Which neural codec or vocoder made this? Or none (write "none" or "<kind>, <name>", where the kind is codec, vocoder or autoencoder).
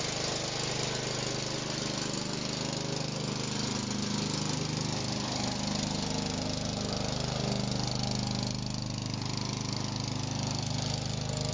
none